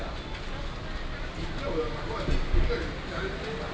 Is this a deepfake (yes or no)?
no